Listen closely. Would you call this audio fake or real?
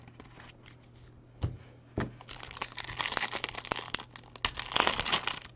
real